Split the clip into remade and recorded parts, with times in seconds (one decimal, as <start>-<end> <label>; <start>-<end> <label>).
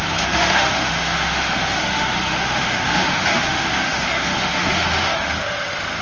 0.0-6.0 remade